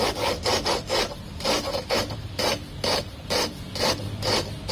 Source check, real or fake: real